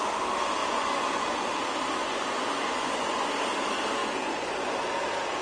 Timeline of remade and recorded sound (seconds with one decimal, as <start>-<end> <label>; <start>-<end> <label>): 0.0-0.6 recorded; 0.6-1.4 remade; 1.4-2.0 recorded; 2.0-3.3 remade; 3.3-4.0 recorded; 4.0-4.8 remade; 4.8-5.4 recorded